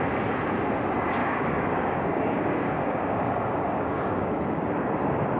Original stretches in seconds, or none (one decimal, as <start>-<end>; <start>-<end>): 0.0-1.2; 4.4-5.4